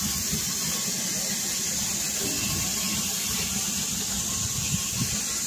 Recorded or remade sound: recorded